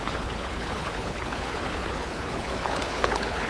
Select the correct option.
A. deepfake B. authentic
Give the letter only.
A